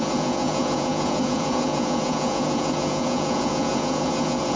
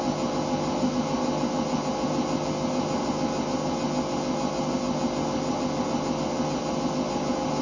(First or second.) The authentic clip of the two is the second